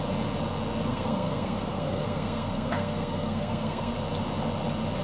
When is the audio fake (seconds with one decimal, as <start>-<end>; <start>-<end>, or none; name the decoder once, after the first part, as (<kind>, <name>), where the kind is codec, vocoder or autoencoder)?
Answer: 0.9-3.9 (codec, SNAC)